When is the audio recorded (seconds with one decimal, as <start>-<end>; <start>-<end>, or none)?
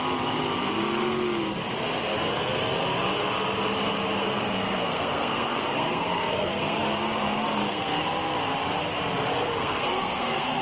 0.0-4.2; 6.8-7.5; 8.0-9.3